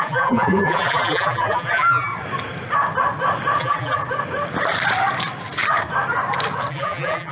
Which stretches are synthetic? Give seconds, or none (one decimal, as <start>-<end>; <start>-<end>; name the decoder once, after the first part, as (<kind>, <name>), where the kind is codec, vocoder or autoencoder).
0.0-2.1 (vocoder, BigVGAN v2); 3.6-4.0; 6.7-7.3